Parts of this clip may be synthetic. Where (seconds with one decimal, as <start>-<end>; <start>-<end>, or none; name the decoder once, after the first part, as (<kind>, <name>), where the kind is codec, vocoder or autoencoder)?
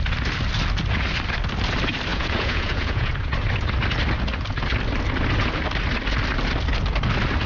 2.1-3.1 (vocoder, Vocos)